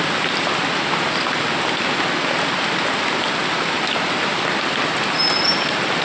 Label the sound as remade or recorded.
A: recorded